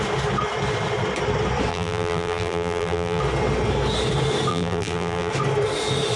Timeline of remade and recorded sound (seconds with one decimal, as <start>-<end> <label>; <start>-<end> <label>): 0.0-1.7 recorded; 1.7-3.2 remade; 3.2-4.5 recorded; 4.5-5.3 remade; 5.3-6.2 recorded